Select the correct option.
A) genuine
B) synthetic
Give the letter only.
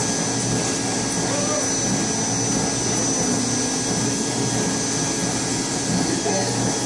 A